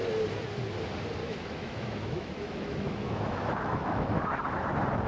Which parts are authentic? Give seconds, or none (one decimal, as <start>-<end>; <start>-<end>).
0.0-1.2; 4.2-5.1